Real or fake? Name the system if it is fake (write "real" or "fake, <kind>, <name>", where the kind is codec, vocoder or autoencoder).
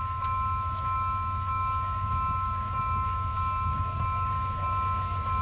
fake, codec, DAC